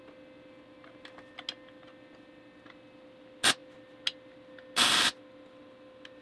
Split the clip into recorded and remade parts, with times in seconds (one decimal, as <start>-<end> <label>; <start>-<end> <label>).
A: 0.0-6.2 recorded